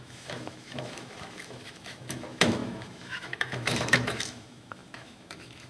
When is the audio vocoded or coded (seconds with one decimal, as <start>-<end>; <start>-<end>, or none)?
0.0-5.7

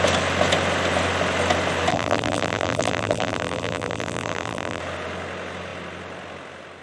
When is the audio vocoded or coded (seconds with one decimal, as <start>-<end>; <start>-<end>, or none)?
1.9-4.8

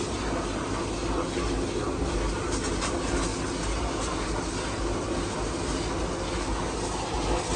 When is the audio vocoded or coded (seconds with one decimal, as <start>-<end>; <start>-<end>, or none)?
none

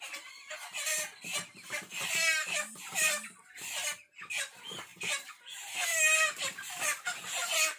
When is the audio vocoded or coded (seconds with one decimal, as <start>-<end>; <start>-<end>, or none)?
none